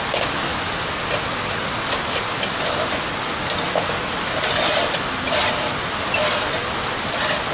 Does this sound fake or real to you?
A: real